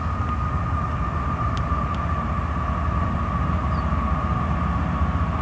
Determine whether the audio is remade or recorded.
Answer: recorded